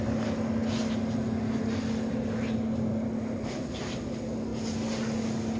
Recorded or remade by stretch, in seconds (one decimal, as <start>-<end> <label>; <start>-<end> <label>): 0.0-5.6 recorded